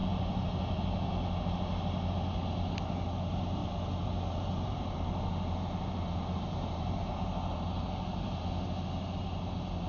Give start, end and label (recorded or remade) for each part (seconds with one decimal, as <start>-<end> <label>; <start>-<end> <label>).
0.0-1.1 remade; 1.1-3.6 recorded; 3.6-8.4 remade; 8.4-9.9 recorded